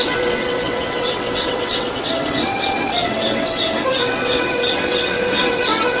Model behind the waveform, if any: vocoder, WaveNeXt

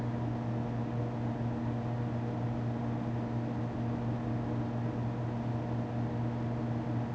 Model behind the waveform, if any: none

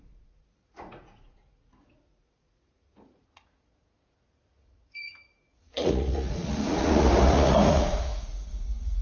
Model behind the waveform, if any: vocoder, Vocos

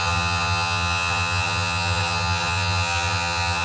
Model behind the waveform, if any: vocoder, HiFi-GAN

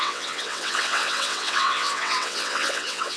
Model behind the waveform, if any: vocoder, WaveNeXt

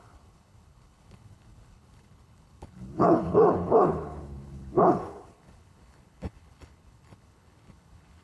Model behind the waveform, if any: codec, HILCodec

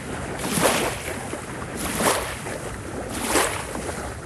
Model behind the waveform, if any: none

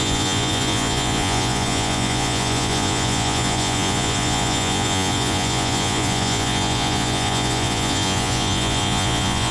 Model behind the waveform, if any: vocoder, Vocos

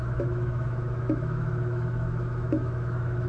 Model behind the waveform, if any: autoencoder, DAC-VAE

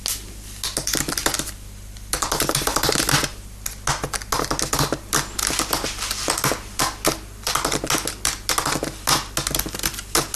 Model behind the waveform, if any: none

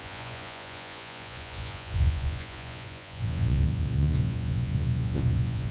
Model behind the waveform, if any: vocoder, Vocos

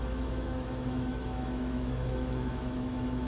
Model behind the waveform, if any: autoencoder, DAC-VAE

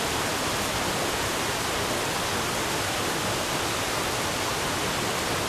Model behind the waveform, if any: none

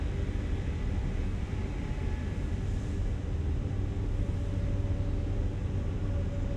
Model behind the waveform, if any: none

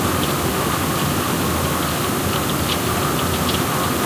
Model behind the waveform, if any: none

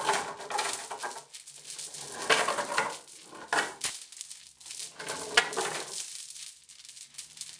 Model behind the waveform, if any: none